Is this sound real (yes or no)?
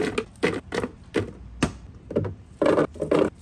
yes